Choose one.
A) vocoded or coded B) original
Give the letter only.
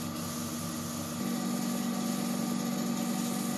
B